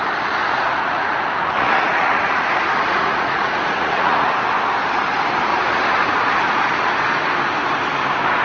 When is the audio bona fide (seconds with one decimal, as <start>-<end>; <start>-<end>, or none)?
0.0-0.4; 4.3-5.5; 6.9-8.4